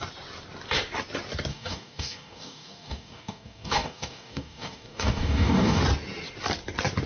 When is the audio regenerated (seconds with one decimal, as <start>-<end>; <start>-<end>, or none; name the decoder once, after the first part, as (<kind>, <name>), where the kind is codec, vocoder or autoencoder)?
1.5-5.8 (codec, DAC)